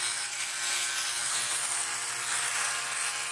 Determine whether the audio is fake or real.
real